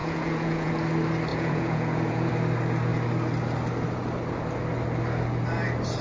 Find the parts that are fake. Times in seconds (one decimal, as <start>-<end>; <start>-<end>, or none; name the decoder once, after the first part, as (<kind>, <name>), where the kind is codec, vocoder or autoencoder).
0.0-0.7 (vocoder, Vocos); 1.3-2.3